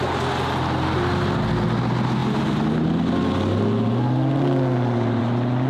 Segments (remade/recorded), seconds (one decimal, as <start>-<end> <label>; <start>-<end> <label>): 0.0-5.7 recorded